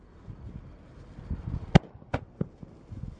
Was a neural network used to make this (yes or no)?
no